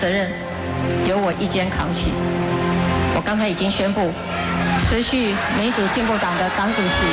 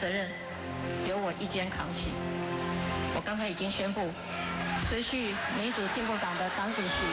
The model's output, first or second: second